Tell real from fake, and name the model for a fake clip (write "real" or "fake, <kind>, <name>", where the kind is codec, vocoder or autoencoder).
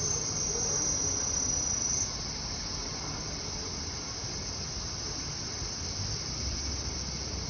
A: real